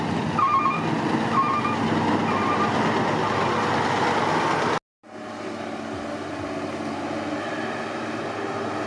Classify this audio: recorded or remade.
recorded